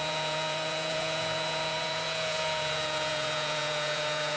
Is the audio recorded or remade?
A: remade